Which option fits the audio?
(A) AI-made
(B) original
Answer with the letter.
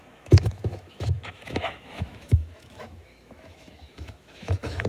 A